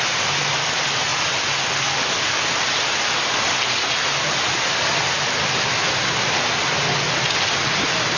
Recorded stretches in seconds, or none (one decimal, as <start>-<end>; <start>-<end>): 0.0-8.2